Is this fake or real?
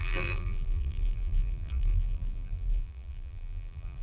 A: fake